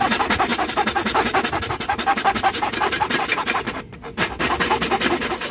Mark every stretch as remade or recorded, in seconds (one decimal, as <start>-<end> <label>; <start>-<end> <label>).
0.0-5.5 recorded